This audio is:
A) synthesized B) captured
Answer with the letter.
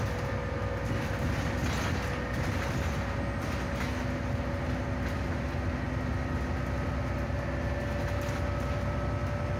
B